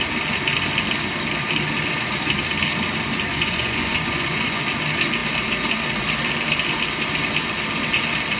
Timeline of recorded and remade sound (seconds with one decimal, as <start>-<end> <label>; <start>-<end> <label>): 0.0-3.3 recorded; 3.3-4.6 remade; 4.6-8.4 recorded